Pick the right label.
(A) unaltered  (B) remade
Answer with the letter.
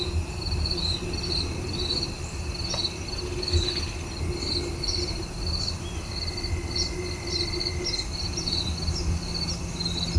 A